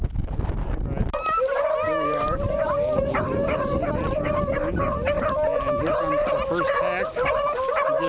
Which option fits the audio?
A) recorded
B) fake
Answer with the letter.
A